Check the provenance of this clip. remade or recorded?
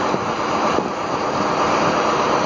recorded